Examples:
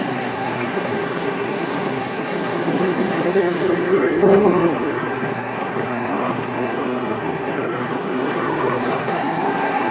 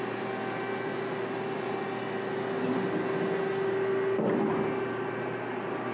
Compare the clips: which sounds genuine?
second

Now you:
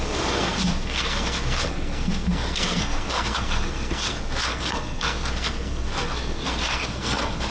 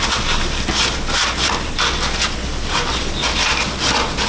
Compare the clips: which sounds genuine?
second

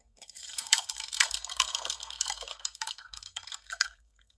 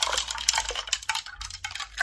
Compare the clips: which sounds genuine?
second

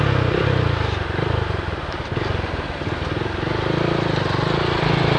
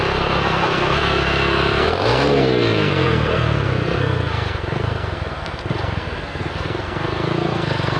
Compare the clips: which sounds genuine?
first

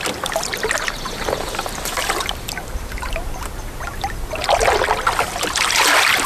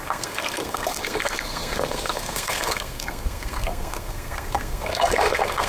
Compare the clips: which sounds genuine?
first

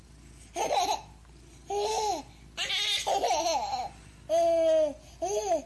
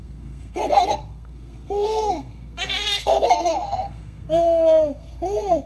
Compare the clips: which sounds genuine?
first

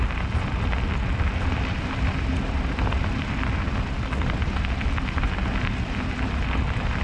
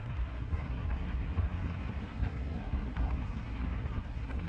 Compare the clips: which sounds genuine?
first